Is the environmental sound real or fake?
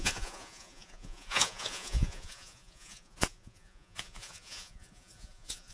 fake